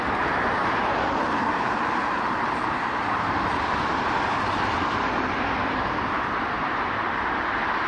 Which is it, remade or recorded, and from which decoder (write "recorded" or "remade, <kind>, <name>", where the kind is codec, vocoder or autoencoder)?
remade, vocoder, BigVGAN v2